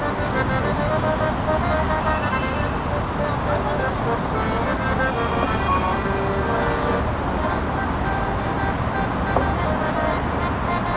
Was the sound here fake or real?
real